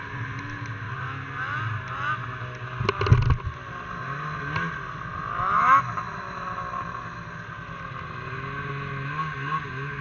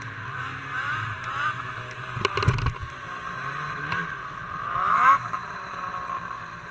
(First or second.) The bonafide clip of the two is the first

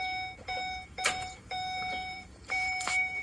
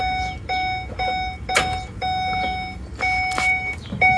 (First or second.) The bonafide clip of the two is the second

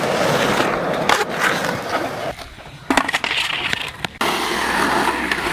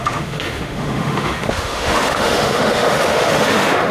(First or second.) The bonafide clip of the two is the first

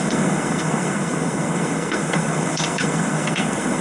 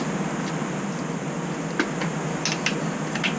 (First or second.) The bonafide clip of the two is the second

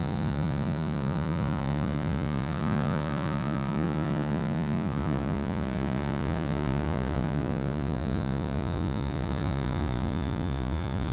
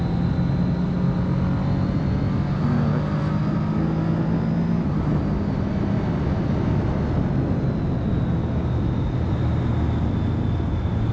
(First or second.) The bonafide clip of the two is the second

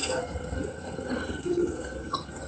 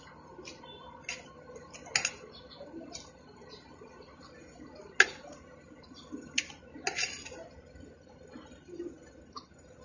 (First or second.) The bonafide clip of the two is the second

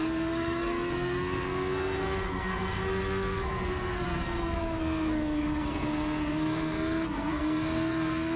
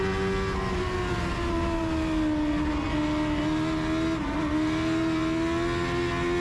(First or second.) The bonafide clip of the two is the second